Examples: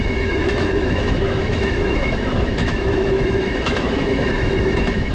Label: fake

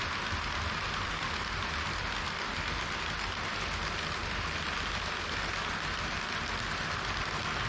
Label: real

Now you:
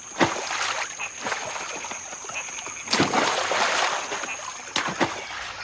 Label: real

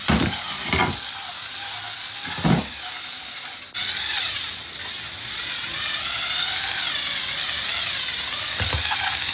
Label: real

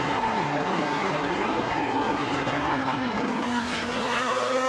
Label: fake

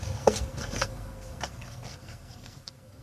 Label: fake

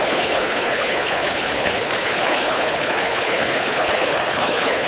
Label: fake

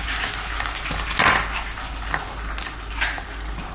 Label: real